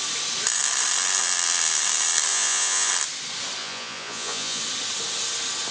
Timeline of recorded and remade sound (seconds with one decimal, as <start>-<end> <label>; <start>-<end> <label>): 0.0-2.3 recorded; 2.3-2.9 remade; 2.9-3.6 recorded; 3.6-4.6 remade; 4.6-5.7 recorded